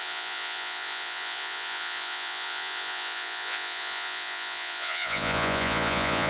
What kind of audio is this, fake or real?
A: fake